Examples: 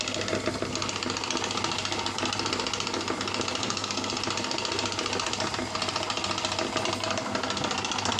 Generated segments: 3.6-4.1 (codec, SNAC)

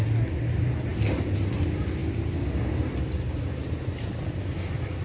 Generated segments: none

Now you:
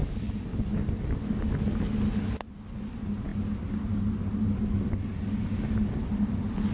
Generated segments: none